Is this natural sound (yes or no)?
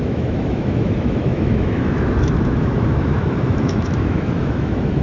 no